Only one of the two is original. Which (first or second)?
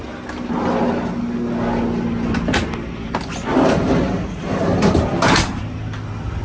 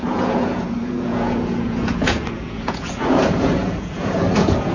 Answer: first